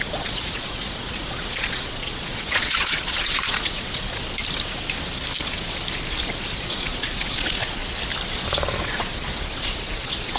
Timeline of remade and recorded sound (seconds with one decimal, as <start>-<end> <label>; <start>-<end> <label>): 0.0-4.3 remade; 4.3-6.5 recorded; 6.5-7.8 remade; 7.8-8.8 recorded; 8.8-10.4 remade

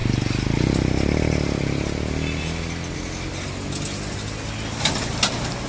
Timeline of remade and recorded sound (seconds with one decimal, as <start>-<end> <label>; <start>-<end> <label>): 0.0-5.7 recorded

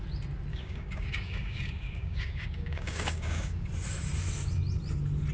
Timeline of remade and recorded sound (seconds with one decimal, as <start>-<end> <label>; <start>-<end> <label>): 0.0-0.5 recorded; 0.5-3.7 remade; 3.7-5.3 recorded